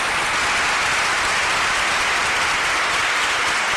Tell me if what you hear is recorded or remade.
recorded